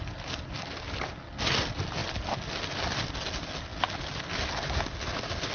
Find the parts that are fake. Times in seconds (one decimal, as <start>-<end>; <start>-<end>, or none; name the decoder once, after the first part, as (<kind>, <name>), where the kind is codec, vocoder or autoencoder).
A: none